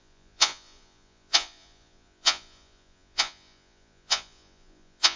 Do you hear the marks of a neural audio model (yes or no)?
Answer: yes